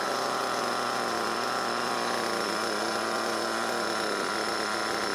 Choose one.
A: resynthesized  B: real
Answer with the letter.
B